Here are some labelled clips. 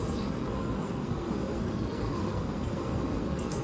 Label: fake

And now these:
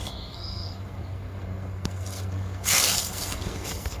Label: fake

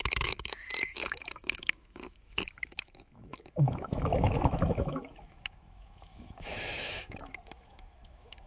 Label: fake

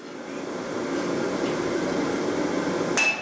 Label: real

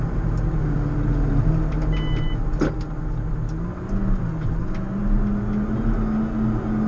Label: real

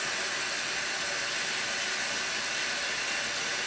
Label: real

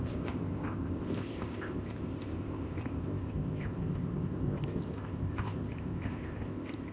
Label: fake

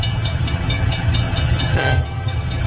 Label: fake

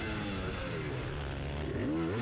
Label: real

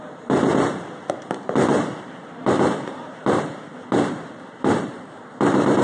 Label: fake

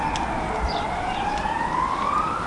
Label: real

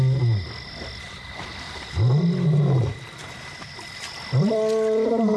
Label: real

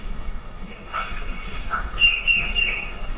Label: fake